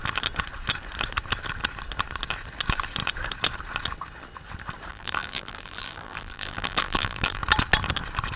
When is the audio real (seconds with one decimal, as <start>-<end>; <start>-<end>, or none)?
0.0-4.9; 7.4-8.4